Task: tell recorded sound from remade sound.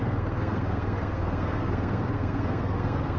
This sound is remade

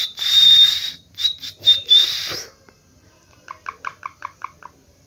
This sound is remade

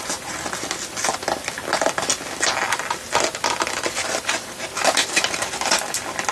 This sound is recorded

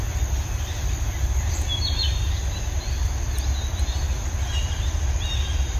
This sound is recorded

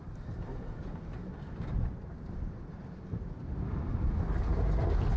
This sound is recorded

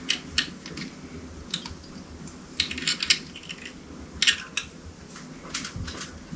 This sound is recorded